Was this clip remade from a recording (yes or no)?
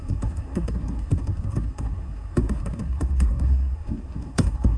yes